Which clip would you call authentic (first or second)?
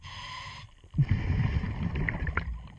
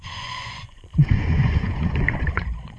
first